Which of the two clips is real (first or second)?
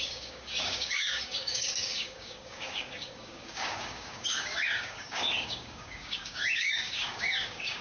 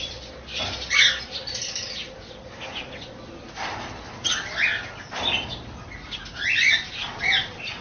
second